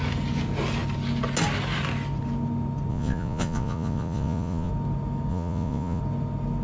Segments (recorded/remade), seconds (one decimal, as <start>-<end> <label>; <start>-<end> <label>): 0.0-2.9 recorded; 2.9-4.7 remade; 4.7-5.3 recorded; 5.3-6.0 remade; 6.0-6.6 recorded